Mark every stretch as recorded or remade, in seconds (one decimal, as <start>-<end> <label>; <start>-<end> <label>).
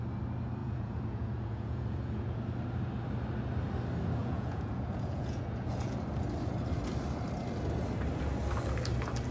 0.0-0.6 recorded; 0.6-2.4 remade; 2.4-4.2 recorded; 4.2-6.0 remade; 6.0-9.3 recorded